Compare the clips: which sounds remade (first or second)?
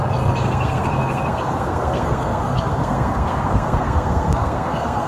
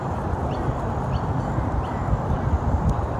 first